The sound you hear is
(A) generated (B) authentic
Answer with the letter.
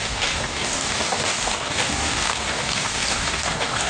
A